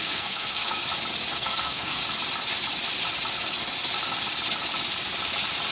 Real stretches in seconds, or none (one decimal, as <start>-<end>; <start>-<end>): 0.8-1.3; 2.0-5.7